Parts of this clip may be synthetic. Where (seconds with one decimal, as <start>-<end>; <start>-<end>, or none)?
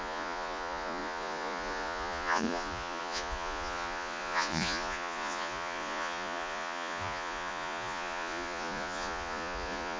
0.0-10.0